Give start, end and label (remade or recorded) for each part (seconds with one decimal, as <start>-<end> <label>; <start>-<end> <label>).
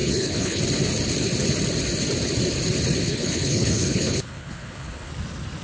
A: 0.0-0.6 remade; 0.6-3.0 recorded; 3.0-5.1 remade; 5.1-5.6 recorded